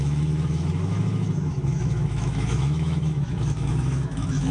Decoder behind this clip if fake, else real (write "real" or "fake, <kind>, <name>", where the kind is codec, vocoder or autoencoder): fake, autoencoder, DAC-VAE